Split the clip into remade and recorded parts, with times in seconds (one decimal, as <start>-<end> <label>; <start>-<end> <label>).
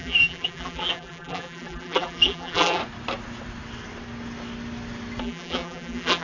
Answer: 0.0-2.8 remade; 2.8-5.2 recorded; 5.2-6.2 remade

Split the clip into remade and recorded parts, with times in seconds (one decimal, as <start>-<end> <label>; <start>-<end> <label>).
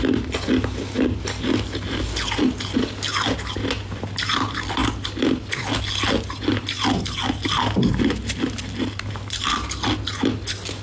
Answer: 0.0-10.8 recorded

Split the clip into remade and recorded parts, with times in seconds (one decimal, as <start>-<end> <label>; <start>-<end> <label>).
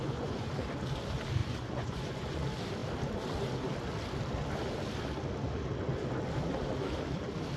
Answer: 0.0-0.5 remade; 0.5-1.4 recorded; 1.4-2.4 remade; 2.4-7.6 recorded